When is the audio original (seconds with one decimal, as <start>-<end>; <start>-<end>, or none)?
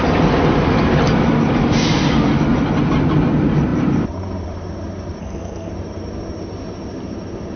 0.0-5.2; 5.7-7.6